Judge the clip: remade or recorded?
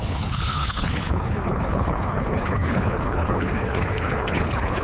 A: remade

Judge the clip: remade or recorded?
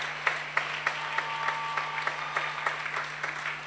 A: recorded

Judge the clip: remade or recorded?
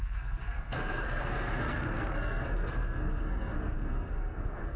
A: remade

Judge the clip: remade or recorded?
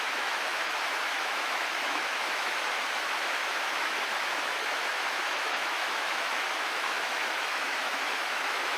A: remade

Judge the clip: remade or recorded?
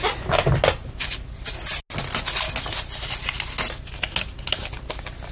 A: recorded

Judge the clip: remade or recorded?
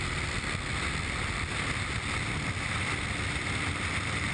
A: recorded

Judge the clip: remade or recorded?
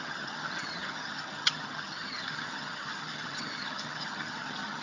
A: remade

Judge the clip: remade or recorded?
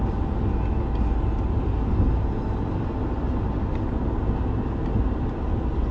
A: recorded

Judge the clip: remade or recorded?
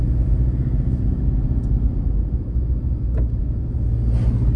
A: recorded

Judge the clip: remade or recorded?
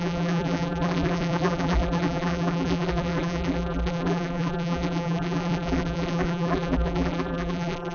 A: remade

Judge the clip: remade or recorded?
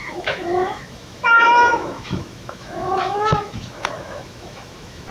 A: remade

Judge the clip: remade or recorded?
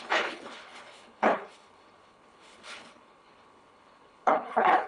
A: remade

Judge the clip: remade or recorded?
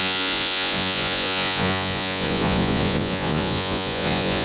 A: remade